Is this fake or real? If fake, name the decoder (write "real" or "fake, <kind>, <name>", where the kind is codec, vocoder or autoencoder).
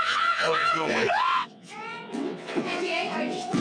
fake, vocoder, WaveNeXt